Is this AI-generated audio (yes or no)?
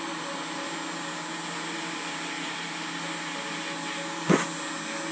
no